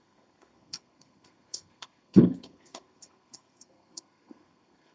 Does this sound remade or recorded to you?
remade